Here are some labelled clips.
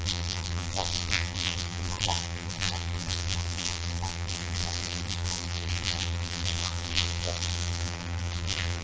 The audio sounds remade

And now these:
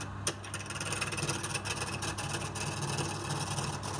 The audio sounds recorded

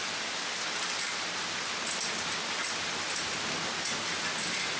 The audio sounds recorded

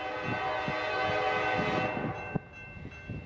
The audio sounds recorded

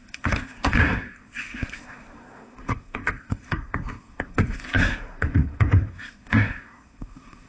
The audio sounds remade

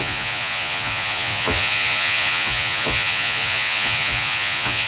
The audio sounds remade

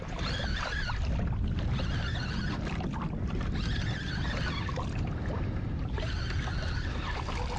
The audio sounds recorded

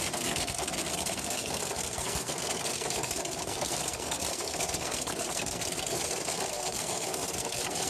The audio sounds remade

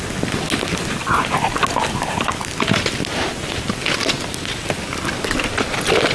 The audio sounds recorded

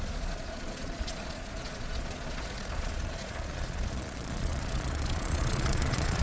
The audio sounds remade